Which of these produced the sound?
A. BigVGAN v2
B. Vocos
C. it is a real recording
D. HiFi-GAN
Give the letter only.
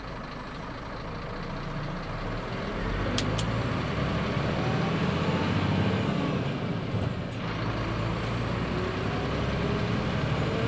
C